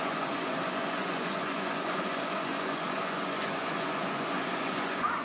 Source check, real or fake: fake